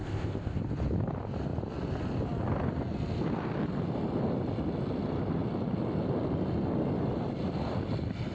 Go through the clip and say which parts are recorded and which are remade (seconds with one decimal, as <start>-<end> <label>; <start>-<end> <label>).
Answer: 0.0-0.6 remade; 0.6-8.3 recorded